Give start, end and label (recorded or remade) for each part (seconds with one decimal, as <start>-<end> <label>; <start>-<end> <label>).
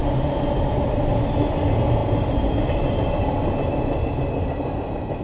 0.0-5.2 recorded